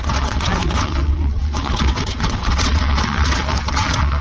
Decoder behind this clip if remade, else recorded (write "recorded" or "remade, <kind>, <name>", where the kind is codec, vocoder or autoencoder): remade, vocoder, WaveNeXt